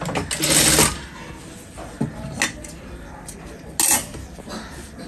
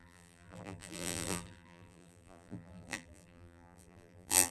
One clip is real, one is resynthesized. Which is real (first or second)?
first